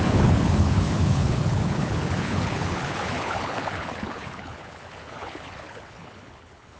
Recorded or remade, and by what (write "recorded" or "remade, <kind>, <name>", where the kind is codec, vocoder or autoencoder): remade, codec, HILCodec